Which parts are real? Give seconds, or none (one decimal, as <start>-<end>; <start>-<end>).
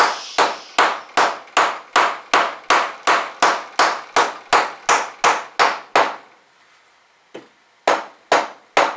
0.0-9.0